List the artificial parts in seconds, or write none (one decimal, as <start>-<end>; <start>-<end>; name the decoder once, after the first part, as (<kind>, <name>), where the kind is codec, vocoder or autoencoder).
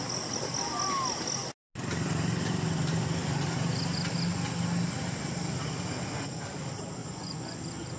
7.0-7.6 (vocoder, Vocos)